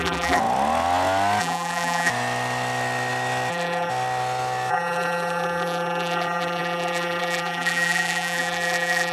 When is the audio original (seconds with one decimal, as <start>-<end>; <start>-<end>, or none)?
0.4-1.4; 2.1-3.5; 3.9-4.7